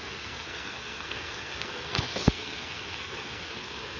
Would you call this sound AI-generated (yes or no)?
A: yes